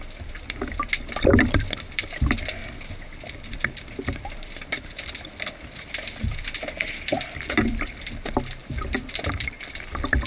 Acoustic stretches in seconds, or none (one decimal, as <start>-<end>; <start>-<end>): 2.6-3.5

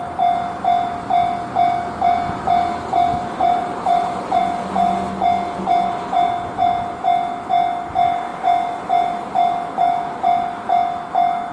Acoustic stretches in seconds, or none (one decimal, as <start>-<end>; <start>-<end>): 0.0-3.1; 4.4-11.5

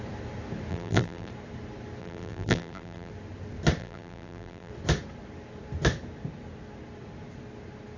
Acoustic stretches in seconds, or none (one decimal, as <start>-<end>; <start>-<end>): 0.0-0.7; 1.3-2.0; 3.1-3.8; 4.7-8.0

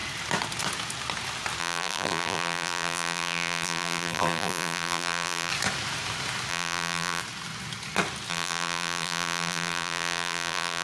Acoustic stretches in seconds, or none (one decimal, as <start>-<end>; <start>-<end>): 0.0-1.6; 5.5-6.5; 7.2-8.3

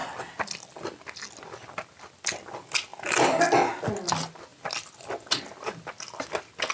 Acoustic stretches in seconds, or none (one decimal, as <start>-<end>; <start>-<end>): 0.0-4.5; 5.3-6.7

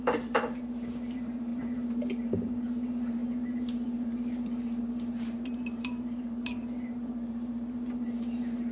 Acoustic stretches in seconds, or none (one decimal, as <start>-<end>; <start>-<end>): none

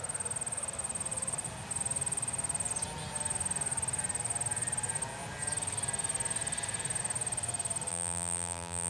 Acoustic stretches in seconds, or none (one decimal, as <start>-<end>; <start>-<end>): 0.0-7.9

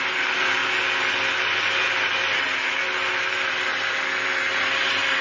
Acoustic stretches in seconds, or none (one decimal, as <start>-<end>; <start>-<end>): 0.6-1.3; 1.9-5.2